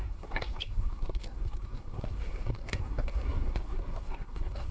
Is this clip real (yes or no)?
no